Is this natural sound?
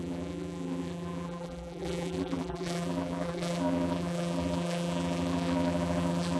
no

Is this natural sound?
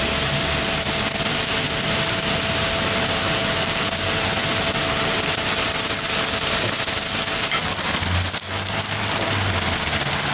yes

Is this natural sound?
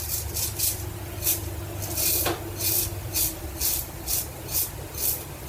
yes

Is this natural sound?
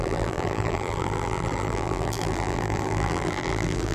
no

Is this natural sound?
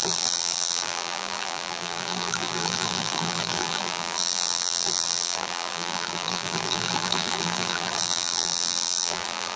no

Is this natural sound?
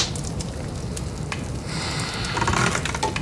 yes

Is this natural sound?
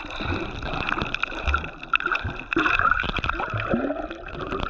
yes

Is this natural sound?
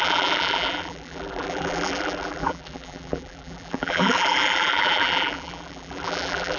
no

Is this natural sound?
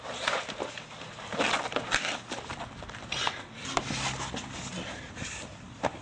no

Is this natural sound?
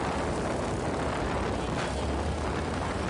yes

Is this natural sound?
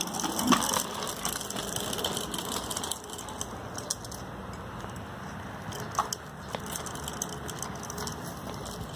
yes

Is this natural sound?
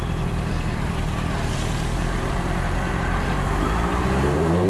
no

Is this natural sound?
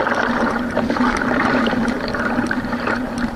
no